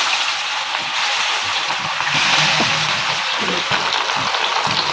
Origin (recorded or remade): recorded